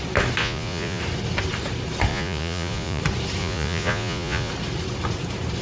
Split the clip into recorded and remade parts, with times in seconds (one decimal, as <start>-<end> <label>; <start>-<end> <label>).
0.0-0.4 recorded; 0.4-1.0 remade; 1.0-2.1 recorded; 2.1-3.0 remade; 3.0-3.4 recorded; 3.4-4.5 remade; 4.5-5.6 recorded